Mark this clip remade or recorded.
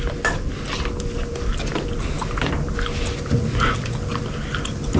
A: recorded